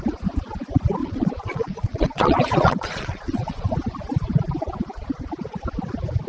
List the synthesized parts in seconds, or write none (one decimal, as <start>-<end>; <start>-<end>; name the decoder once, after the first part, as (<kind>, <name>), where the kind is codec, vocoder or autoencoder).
1.0-3.7 (vocoder, Vocos)